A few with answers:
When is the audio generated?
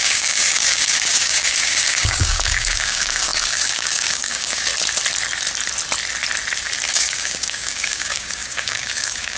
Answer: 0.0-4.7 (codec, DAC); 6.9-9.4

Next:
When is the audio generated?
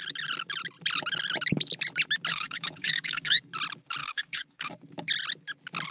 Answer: 2.3-3.4 (codec, DAC); 4.0-4.7